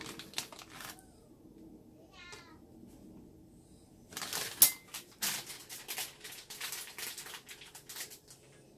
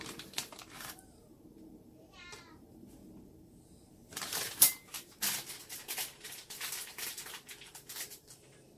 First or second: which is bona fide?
first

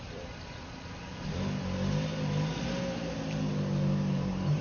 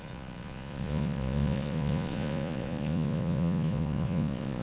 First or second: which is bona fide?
first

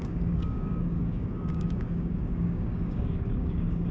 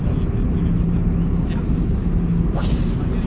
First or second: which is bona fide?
second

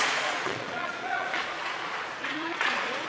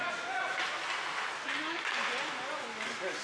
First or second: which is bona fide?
second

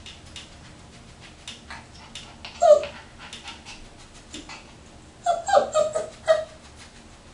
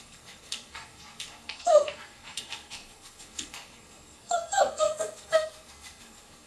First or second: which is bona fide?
first